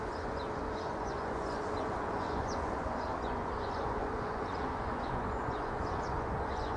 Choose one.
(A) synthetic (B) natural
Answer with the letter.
A